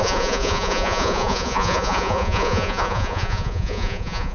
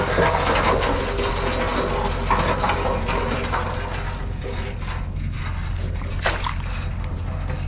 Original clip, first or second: second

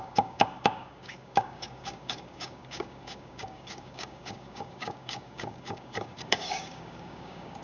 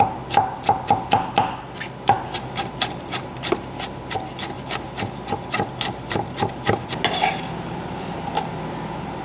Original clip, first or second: second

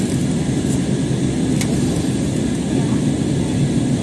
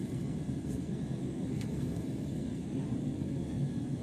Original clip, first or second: first